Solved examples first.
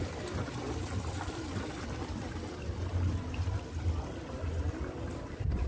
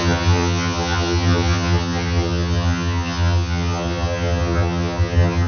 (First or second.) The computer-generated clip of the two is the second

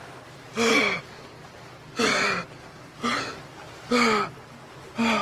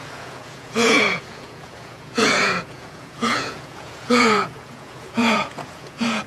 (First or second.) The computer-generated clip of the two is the second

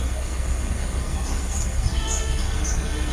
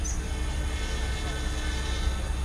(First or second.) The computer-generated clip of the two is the first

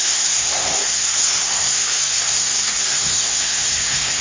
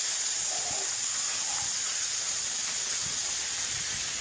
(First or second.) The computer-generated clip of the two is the first